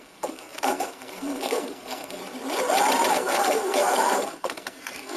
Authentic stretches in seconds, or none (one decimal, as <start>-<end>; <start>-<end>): 2.2-3.1